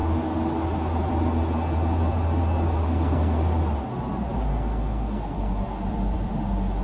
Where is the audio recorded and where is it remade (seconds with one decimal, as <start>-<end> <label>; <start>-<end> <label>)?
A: 0.0-2.8 recorded; 2.8-3.6 remade; 3.6-4.5 recorded; 4.5-5.6 remade; 5.6-6.8 recorded